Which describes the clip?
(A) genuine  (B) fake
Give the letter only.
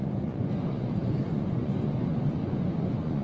B